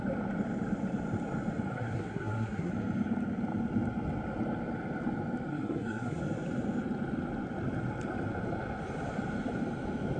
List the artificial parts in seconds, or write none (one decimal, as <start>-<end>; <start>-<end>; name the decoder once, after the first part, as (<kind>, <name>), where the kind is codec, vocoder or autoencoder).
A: 1.7-2.7 (codec, SNAC); 5.5-6.2